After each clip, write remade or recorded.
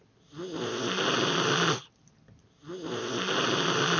recorded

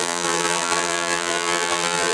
remade